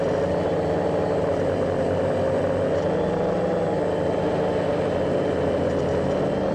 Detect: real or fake real